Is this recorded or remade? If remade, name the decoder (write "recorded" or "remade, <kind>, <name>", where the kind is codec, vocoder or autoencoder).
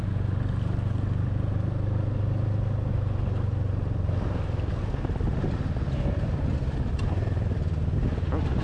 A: recorded